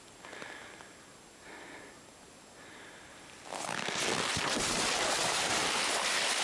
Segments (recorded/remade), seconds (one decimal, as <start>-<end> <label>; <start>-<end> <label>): 0.0-6.4 recorded